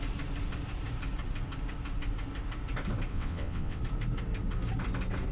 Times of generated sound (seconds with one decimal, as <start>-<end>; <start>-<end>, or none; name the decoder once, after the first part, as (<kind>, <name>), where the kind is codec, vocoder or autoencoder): 3.1-3.8 (vocoder, WaveNeXt)